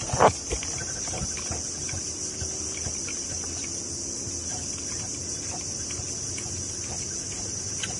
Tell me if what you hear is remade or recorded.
recorded